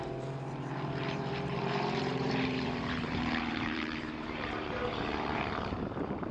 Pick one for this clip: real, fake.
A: fake